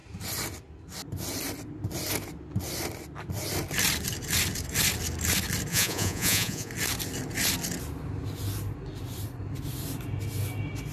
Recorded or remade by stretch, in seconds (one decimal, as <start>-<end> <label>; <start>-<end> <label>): 0.0-5.7 recorded; 5.7-6.7 remade; 6.7-10.9 recorded